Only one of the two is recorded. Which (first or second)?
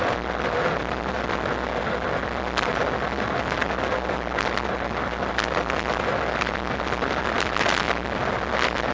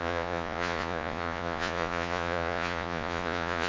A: first